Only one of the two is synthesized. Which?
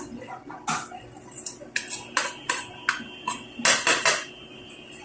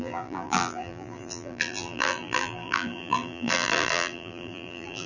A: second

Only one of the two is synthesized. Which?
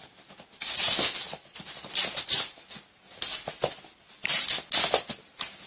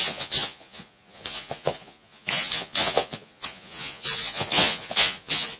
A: second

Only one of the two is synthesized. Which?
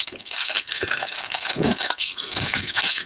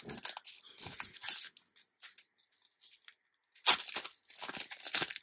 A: first